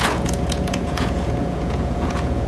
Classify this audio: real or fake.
fake